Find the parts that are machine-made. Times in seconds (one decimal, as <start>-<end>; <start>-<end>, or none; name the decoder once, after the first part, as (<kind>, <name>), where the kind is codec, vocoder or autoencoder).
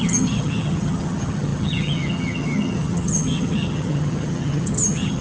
0.0-5.2 (vocoder, HiFi-GAN)